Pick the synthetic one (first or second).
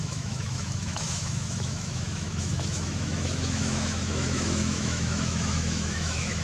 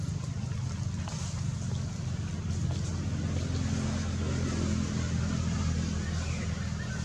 first